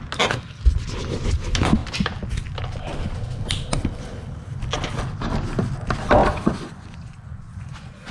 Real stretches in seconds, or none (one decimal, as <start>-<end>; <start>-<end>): 0.0-6.2